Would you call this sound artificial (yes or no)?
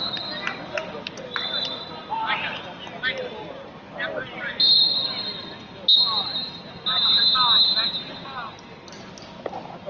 no